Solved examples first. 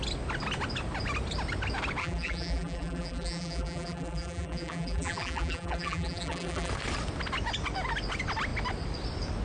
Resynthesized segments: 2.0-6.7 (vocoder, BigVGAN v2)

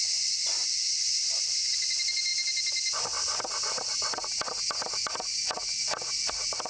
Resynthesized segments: none

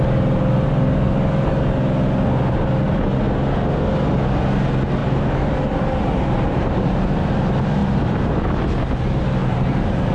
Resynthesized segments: 5.0-7.0 (vocoder, BigVGAN v2); 7.8-8.4; 9.4-10.1

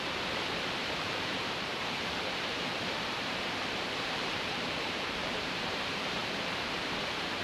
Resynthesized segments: 0.0-7.4 (vocoder, BigVGAN v2)